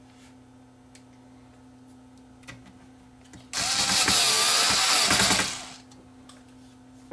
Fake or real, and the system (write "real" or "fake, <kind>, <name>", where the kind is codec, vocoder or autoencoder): real